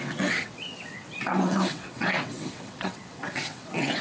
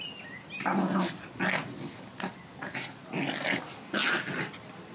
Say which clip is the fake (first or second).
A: first